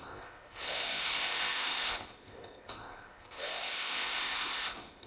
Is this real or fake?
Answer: fake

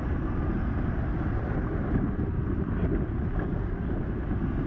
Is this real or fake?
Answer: real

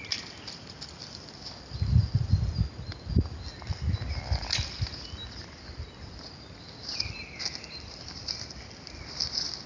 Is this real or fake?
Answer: real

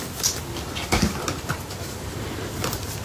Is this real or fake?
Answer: real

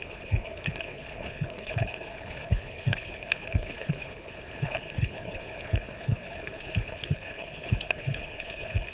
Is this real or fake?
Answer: fake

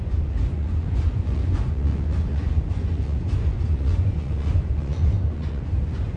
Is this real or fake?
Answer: fake